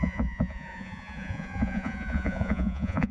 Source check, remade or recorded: remade